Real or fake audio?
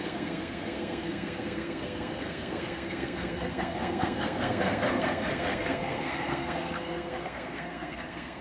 fake